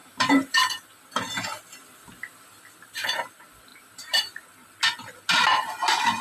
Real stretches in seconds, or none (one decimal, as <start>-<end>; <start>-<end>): 0.7-3.7; 4.5-6.2